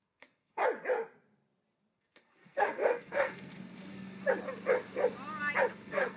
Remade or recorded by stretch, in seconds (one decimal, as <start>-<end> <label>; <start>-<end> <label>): 0.0-0.6 remade; 0.6-1.9 recorded; 1.9-4.2 remade; 4.2-5.7 recorded; 5.7-6.2 remade